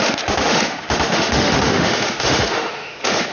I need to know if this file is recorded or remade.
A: remade